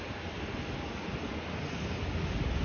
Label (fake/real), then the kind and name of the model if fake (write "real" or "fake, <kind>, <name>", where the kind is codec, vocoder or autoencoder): real